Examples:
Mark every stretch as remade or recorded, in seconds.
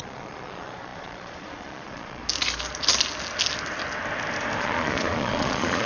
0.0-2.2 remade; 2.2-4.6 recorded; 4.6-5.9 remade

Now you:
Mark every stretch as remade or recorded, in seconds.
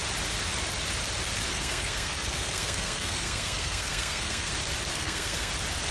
0.0-1.5 recorded; 1.5-4.5 remade; 4.5-4.9 recorded; 4.9-5.5 remade; 5.5-5.9 recorded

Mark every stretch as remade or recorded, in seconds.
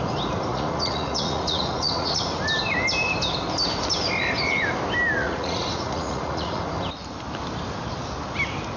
0.0-0.5 recorded; 0.5-2.2 remade; 2.2-5.2 recorded; 5.2-6.6 remade; 6.6-8.8 recorded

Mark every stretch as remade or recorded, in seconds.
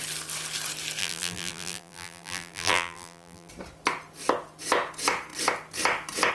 0.0-1.0 recorded; 1.0-3.5 remade; 3.5-6.3 recorded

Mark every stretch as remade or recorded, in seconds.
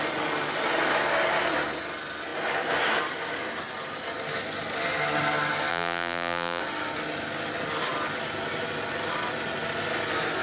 0.0-5.7 recorded; 5.7-6.6 remade; 6.6-10.4 recorded